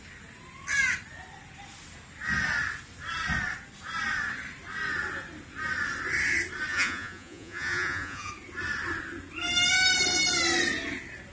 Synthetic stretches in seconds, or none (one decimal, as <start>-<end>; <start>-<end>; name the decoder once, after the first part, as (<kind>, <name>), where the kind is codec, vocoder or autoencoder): 6.7-8.3 (vocoder, Vocos)